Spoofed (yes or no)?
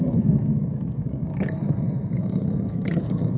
yes